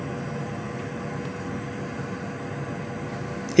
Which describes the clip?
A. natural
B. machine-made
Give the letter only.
A